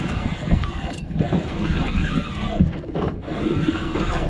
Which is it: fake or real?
fake